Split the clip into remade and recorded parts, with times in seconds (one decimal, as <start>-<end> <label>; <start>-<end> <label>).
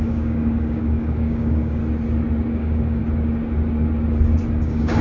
0.0-1.8 remade; 1.8-2.5 recorded; 2.5-3.0 remade; 3.0-4.6 recorded; 4.6-5.0 remade